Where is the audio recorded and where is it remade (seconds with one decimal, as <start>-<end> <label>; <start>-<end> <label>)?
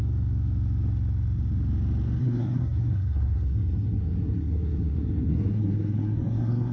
0.0-2.2 recorded; 2.2-6.7 remade